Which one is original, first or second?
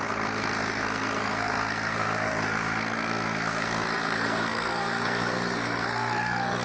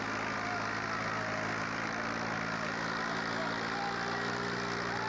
second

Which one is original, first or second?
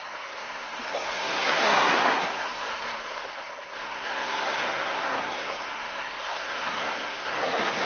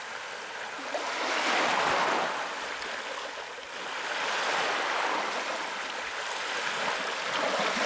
second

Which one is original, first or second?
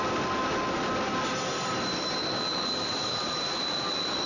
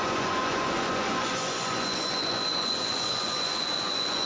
first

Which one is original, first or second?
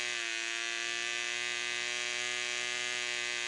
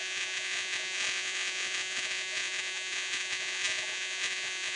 first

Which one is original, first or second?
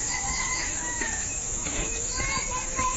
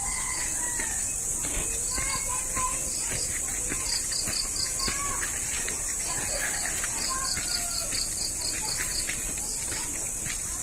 second